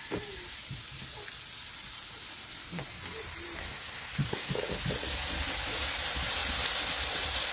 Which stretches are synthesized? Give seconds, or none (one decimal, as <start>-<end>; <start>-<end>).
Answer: 3.6-4.5